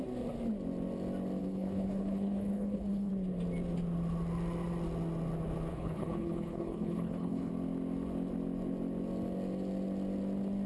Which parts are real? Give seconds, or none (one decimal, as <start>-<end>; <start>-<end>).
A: 0.0-1.4; 3.1-5.7; 7.5-10.7